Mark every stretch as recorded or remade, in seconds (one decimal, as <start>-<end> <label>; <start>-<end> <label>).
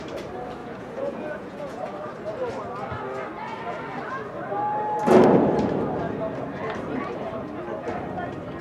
0.0-0.6 recorded; 0.6-1.8 remade; 1.8-8.6 recorded